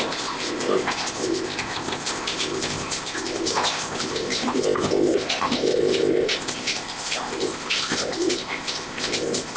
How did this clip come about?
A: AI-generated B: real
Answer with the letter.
A